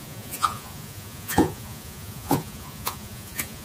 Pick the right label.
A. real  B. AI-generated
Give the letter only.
B